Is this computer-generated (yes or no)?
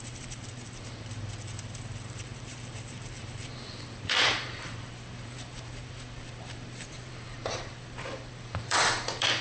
yes